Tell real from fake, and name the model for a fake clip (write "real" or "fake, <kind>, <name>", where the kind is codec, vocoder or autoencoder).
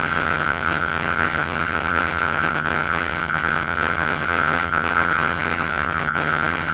fake, vocoder, HiFi-GAN